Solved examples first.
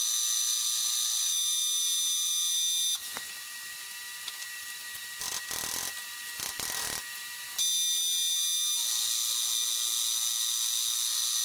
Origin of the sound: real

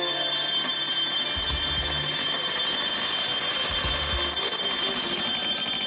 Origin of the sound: real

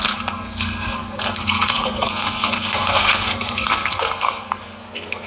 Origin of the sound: fake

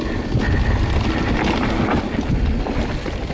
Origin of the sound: real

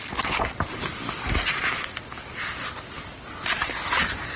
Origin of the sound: real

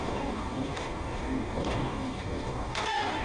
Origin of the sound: fake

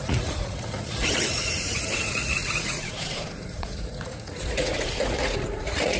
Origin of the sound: fake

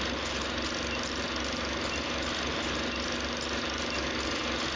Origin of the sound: real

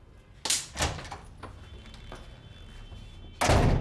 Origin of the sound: real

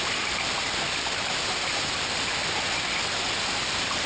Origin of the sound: real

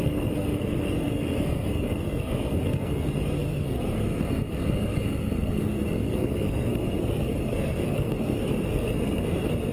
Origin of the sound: fake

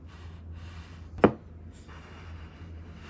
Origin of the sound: real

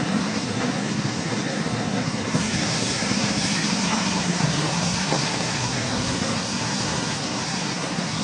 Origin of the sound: fake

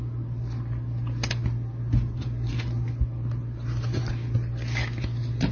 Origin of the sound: real